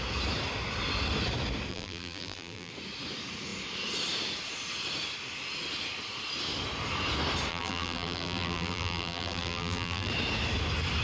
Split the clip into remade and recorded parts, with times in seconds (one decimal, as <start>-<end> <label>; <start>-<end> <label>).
0.0-1.7 recorded; 1.7-2.7 remade; 2.7-7.5 recorded; 7.5-10.1 remade; 10.1-11.0 recorded